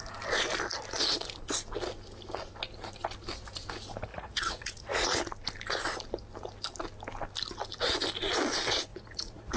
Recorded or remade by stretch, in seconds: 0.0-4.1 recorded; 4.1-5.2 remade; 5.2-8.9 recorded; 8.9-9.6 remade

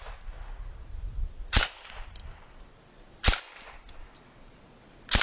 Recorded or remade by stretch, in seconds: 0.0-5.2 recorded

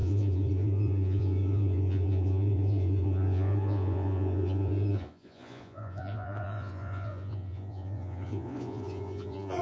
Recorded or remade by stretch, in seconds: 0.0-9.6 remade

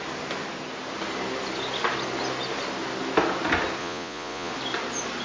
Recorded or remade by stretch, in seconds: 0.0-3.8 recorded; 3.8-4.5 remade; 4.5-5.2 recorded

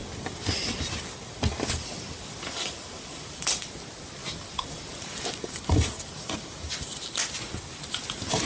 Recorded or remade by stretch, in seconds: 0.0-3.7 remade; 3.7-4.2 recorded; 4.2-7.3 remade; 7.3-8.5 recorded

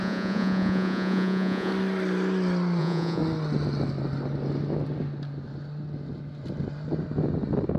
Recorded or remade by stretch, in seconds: 0.0-1.7 remade; 1.7-2.8 recorded; 2.8-3.2 remade; 3.2-7.8 recorded

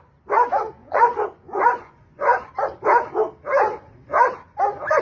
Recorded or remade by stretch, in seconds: 0.0-0.8 recorded; 0.8-2.4 remade; 2.4-5.0 recorded